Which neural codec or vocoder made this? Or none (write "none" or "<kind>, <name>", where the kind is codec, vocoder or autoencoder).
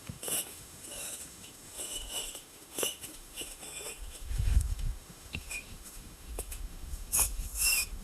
autoencoder, DAC-VAE